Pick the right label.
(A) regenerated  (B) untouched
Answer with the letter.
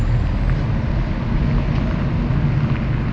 B